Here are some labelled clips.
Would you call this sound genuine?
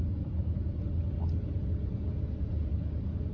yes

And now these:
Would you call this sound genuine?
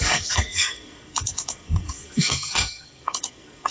no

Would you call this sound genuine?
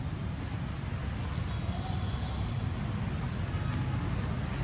yes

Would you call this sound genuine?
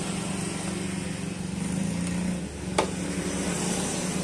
yes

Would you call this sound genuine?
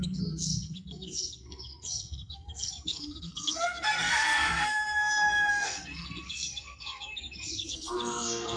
no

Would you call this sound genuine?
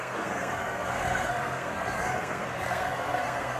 no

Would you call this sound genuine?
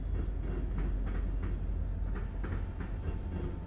yes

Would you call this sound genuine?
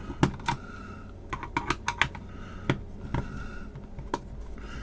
yes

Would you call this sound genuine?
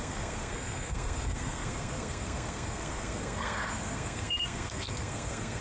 no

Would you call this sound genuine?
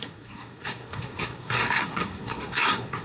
no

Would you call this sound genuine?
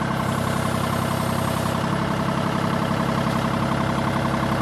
yes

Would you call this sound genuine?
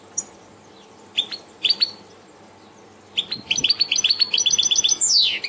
yes